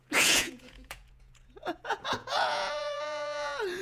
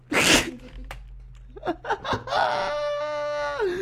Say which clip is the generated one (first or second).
first